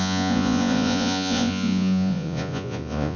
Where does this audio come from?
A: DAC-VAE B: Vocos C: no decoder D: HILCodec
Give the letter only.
B